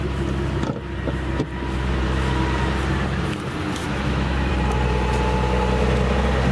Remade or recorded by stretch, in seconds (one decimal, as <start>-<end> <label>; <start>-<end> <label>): 0.0-3.8 recorded; 3.8-4.5 remade; 4.5-6.5 recorded